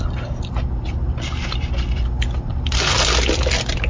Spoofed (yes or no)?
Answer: no